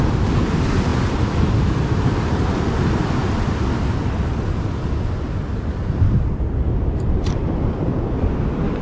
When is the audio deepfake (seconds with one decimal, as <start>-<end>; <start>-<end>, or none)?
0.0-3.2; 5.5-8.8